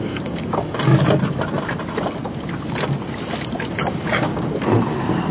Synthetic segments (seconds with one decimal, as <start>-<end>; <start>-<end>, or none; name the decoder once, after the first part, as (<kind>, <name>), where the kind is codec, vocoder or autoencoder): 0.0-0.9 (codec, DAC); 3.7-4.3